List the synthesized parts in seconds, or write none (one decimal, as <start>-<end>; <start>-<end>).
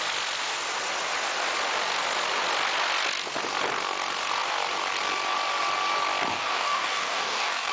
6.3-7.7